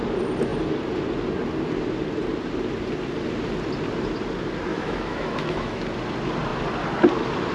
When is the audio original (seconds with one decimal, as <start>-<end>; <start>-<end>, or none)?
0.0-4.7; 5.8-7.5